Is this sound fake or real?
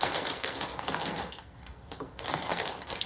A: fake